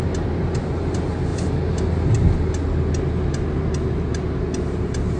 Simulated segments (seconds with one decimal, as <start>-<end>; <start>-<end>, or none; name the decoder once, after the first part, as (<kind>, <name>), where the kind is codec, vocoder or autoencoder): none